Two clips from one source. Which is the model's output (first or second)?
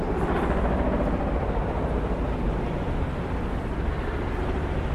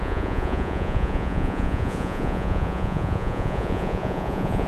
second